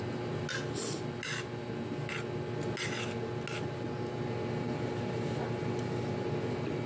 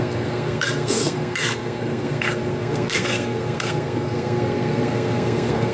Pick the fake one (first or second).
second